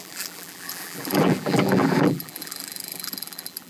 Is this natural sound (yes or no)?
no